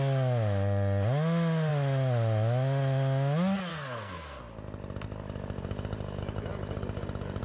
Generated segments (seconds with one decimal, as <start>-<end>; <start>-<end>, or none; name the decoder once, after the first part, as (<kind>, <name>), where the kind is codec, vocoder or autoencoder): 3.7-4.4 (codec, SNAC)